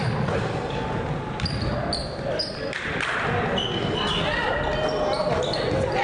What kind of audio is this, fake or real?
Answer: real